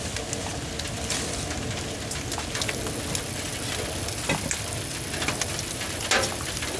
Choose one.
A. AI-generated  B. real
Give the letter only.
B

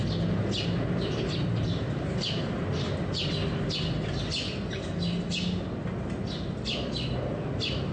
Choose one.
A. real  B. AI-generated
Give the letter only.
A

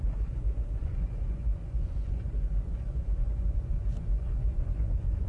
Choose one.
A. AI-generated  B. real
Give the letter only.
A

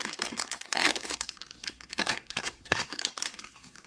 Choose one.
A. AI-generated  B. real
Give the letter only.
A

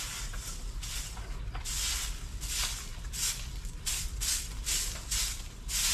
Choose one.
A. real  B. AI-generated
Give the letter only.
A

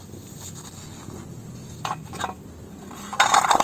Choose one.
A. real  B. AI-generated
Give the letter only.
A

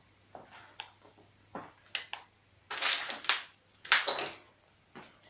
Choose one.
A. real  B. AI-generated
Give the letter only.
A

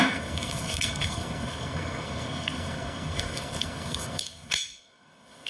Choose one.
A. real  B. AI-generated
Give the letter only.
B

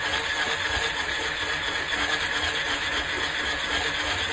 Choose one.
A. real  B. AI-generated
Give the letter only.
A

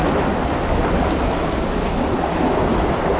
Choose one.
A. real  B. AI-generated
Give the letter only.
A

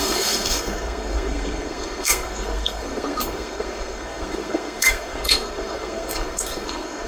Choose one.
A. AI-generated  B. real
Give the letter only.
A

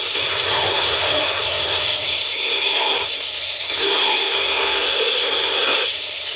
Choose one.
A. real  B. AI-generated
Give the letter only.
B